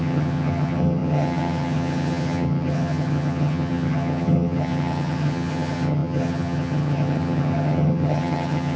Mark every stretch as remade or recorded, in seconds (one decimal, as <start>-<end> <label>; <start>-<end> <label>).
0.0-8.8 remade